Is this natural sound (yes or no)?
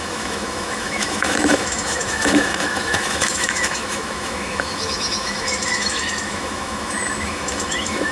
no